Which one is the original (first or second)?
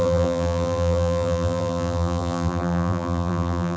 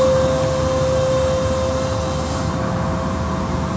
second